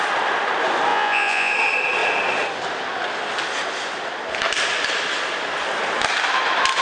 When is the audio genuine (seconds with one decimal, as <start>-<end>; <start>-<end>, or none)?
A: 0.0-0.9; 1.5-6.8